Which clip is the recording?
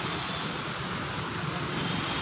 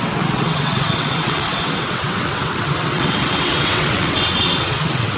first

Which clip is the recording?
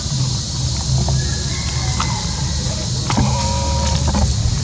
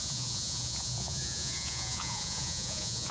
first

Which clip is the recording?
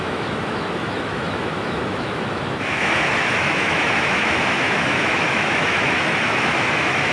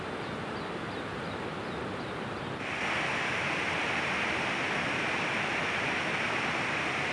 second